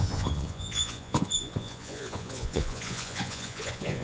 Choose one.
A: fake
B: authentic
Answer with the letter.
A